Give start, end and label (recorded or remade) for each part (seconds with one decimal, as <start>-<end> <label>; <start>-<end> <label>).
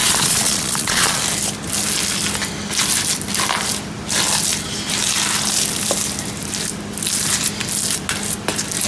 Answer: 0.0-1.2 remade; 1.2-8.9 recorded